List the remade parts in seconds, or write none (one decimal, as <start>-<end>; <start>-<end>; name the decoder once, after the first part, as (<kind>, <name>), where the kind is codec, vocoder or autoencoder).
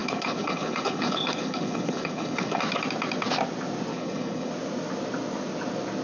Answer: 0.0-2.6 (codec, HILCodec); 3.9-4.5